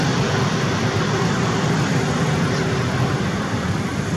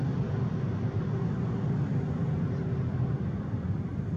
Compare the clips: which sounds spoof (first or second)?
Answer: first